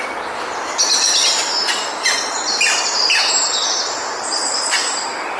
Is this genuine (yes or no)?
yes